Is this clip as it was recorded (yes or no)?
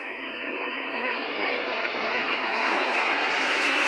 no